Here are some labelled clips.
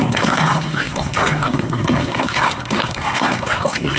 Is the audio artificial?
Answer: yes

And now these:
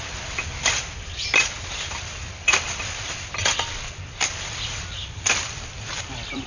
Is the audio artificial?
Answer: yes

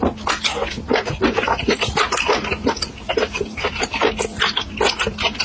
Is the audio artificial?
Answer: no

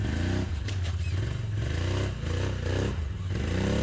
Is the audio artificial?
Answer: no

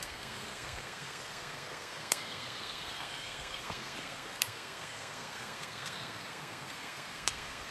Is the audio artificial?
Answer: yes